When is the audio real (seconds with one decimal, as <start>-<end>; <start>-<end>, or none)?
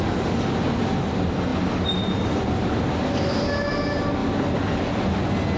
0.0-5.6